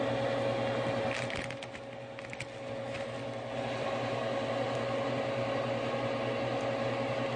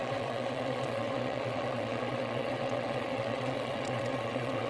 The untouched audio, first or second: first